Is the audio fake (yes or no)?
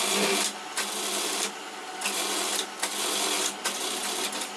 no